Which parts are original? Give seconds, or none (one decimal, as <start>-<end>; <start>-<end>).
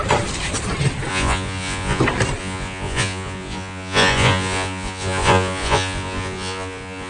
0.0-1.1; 2.0-2.4